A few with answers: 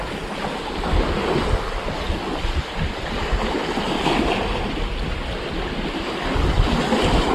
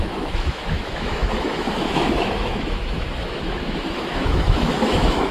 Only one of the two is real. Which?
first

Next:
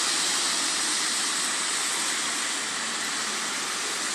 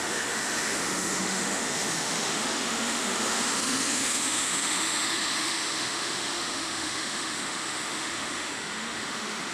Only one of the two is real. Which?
first